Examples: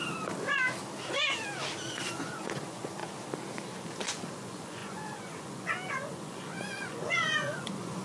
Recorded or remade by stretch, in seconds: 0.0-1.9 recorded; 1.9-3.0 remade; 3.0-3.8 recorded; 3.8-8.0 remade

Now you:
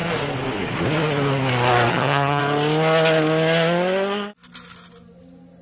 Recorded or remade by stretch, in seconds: 0.0-1.9 recorded; 1.9-2.4 remade; 2.4-5.6 recorded